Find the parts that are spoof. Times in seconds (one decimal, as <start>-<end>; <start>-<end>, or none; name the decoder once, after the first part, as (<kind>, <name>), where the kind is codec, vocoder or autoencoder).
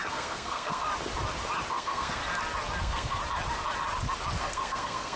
0.0-0.9 (codec, SNAC); 1.7-2.2; 2.8-3.2; 4.4-5.2